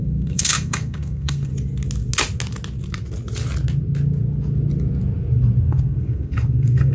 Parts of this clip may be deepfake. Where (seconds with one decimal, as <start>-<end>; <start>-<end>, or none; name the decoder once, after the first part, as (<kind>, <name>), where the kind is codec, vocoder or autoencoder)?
0.0-1.5 (codec, SNAC); 5.6-6.9

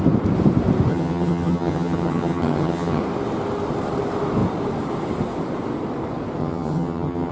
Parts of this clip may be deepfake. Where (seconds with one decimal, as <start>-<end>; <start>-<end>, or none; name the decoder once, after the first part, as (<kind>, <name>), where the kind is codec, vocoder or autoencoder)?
0.9-3.0 (vocoder, HiFi-GAN); 6.4-7.3

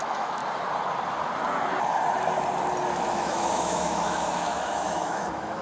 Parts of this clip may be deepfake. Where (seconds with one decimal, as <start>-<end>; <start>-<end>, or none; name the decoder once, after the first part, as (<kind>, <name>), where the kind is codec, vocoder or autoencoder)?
0.0-0.4 (autoencoder, DAC-VAE); 3.0-5.6

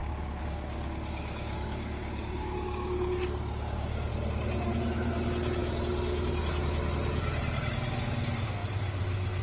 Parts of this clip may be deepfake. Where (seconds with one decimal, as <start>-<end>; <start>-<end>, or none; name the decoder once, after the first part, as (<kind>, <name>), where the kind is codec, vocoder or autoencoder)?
0.0-4.1 (codec, DAC)